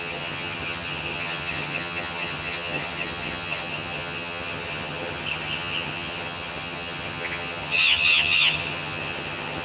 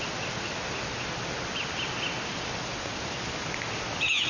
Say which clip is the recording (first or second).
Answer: second